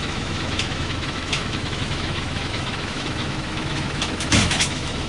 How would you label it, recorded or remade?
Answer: remade